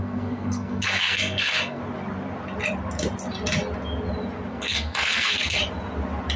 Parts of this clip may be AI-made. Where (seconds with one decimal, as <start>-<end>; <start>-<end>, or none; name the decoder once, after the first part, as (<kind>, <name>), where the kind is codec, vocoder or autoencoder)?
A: 0.0-1.8 (codec, SNAC); 4.5-5.6